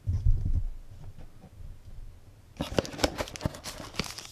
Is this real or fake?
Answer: real